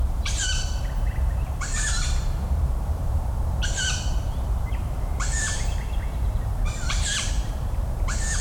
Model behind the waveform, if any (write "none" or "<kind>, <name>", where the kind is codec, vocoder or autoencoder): vocoder, BigVGAN v2